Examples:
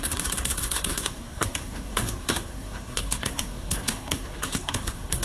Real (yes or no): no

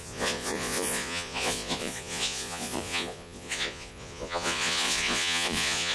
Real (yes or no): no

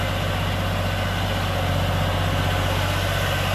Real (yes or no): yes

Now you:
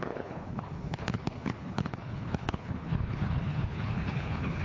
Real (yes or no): no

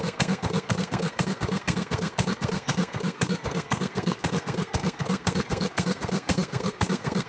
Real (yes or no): no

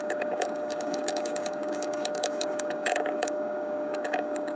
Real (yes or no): no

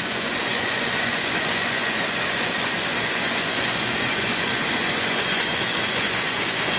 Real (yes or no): no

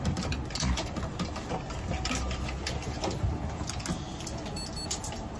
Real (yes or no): yes